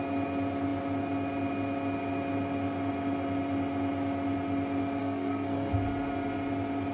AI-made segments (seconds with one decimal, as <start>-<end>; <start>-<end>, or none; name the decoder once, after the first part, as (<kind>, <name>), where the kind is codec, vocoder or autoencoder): 5.0-5.7 (codec, SNAC)